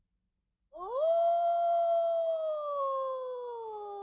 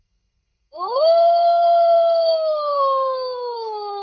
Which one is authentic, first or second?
first